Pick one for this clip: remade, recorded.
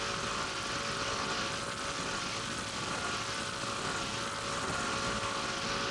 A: recorded